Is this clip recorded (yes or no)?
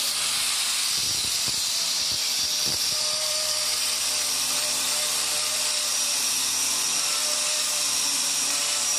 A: no